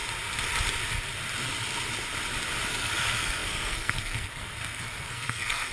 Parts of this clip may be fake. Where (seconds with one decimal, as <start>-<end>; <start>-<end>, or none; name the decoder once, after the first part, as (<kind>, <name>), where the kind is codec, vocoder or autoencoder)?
2.7-5.7 (codec, SNAC)